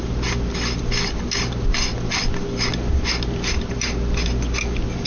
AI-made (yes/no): no